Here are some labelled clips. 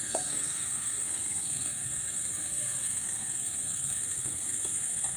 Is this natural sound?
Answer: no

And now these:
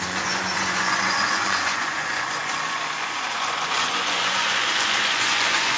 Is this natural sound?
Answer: no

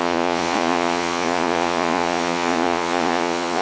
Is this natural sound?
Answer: no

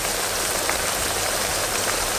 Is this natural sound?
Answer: yes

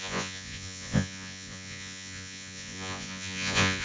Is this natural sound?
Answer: no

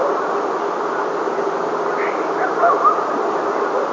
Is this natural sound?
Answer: yes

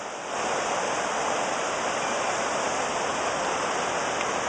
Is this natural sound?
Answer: yes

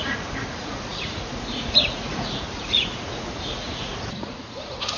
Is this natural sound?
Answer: no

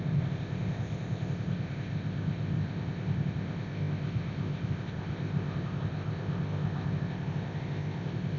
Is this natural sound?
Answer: no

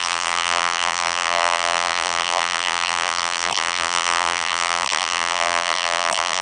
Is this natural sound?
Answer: no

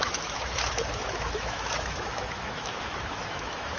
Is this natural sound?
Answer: no